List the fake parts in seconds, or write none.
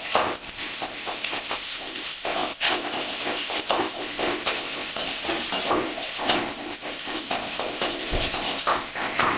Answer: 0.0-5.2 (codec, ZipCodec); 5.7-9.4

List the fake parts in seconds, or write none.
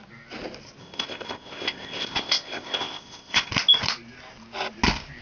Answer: 0.8-3.5 (codec, ZipCodec)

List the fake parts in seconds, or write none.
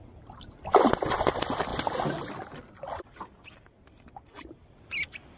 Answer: none